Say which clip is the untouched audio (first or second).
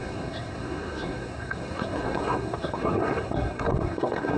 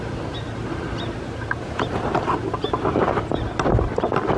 second